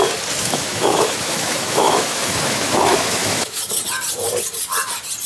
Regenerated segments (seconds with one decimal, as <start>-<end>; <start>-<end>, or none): 0.4-3.6